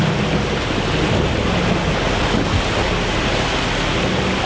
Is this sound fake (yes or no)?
no